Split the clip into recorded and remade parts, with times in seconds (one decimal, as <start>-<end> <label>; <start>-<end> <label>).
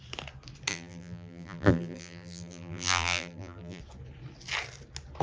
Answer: 0.0-0.7 recorded; 0.7-3.8 remade; 3.8-5.2 recorded